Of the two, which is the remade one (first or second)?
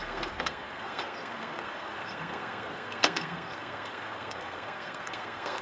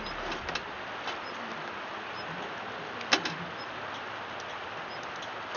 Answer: first